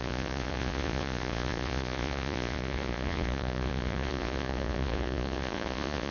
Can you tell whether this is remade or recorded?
remade